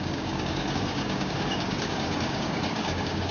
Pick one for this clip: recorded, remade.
remade